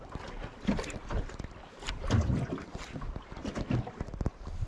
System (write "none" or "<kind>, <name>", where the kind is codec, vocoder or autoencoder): none